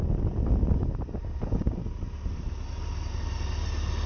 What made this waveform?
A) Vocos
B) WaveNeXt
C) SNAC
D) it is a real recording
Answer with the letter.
D